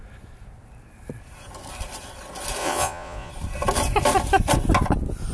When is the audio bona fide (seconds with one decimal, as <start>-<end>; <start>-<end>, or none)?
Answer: 0.0-2.6; 3.3-5.3